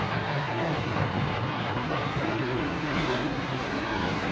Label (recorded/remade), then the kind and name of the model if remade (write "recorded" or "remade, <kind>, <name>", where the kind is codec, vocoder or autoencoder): remade, codec, SNAC